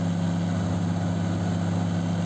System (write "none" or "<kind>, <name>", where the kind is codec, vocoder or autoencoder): none